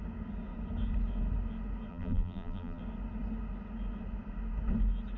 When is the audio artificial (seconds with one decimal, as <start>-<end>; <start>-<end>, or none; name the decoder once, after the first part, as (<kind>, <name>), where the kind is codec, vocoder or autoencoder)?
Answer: 1.9-2.8 (vocoder, BigVGAN v2)